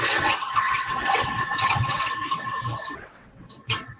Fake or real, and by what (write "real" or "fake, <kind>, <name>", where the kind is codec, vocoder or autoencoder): fake, vocoder, WaveNeXt